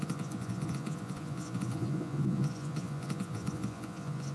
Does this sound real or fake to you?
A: fake